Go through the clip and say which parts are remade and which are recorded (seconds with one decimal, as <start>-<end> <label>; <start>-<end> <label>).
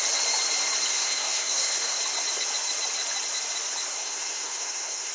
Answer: 0.0-0.9 recorded; 0.9-2.0 remade; 2.0-3.9 recorded; 3.9-5.1 remade